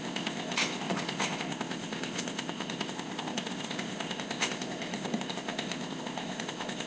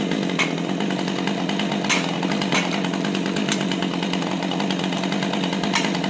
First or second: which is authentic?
second